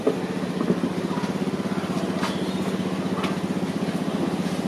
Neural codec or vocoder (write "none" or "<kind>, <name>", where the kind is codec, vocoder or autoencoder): none